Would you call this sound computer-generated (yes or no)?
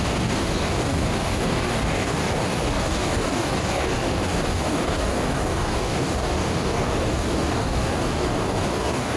yes